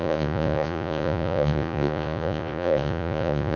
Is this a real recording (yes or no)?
no